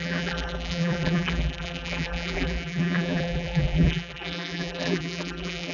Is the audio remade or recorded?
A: remade